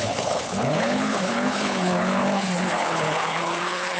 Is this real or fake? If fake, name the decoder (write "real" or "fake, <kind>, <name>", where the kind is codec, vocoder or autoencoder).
fake, codec, HILCodec